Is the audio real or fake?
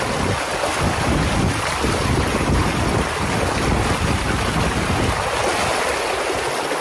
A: real